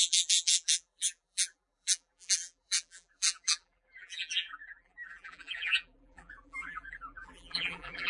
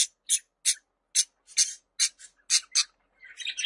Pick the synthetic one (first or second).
first